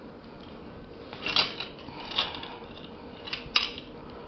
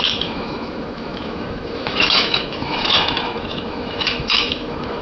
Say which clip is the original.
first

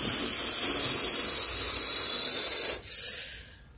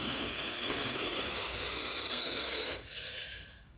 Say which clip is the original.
first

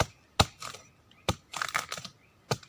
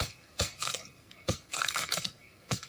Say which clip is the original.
first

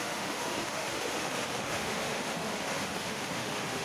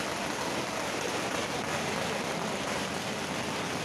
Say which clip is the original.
second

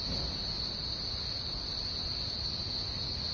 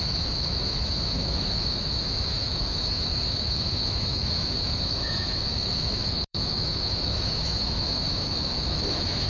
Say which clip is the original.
first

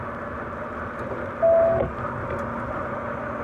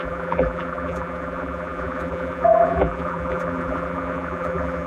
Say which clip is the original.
first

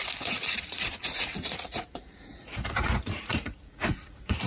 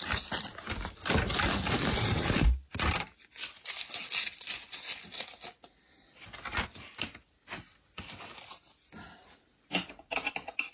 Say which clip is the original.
second